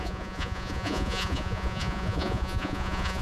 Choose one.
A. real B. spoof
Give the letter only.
B